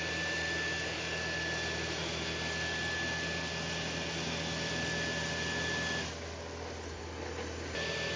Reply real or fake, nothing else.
real